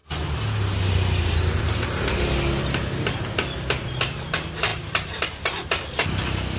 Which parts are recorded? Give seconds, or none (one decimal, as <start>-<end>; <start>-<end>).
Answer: 1.6-6.6